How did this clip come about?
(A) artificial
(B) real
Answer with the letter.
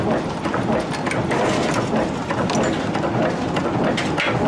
B